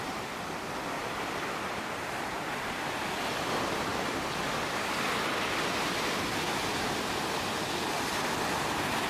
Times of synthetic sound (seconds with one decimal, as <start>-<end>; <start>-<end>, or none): none